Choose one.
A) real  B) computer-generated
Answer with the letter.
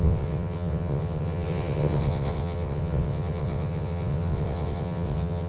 B